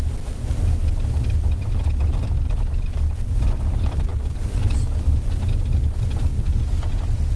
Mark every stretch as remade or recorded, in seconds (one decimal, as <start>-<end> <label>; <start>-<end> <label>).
0.0-7.4 recorded